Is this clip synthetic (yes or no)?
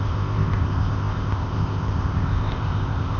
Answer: yes